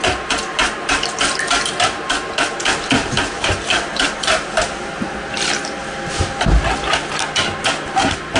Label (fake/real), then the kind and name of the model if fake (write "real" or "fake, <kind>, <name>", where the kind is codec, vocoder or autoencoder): real